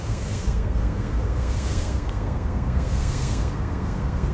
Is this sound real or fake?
fake